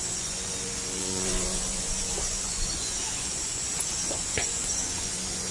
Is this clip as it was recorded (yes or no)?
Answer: no